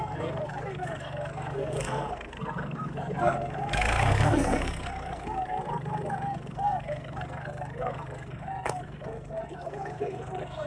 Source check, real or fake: fake